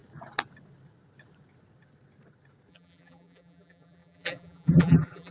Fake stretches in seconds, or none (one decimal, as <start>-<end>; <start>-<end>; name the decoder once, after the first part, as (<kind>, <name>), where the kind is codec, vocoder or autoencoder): 2.7-5.3 (vocoder, BigVGAN v2)